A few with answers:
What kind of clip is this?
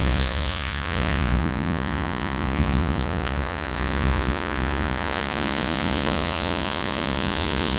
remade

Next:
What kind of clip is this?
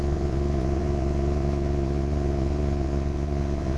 remade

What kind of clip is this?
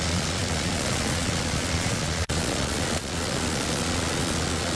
remade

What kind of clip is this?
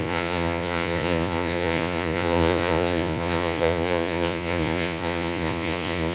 remade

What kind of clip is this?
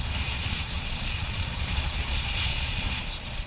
remade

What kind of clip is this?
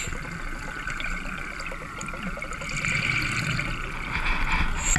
recorded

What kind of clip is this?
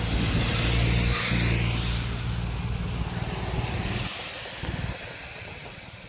recorded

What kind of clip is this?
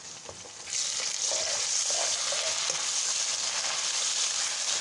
recorded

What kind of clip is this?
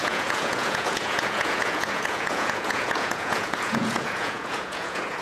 remade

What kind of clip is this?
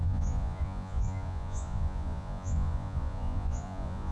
remade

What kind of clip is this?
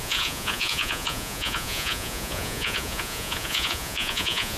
remade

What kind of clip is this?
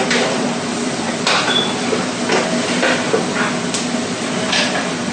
recorded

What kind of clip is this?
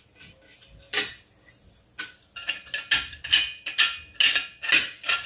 recorded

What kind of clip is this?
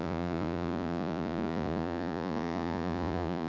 remade